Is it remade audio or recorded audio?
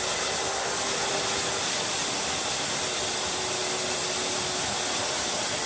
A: recorded